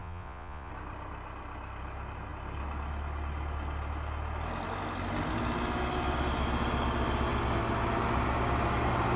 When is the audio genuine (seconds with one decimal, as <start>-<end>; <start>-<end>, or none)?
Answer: 0.7-9.2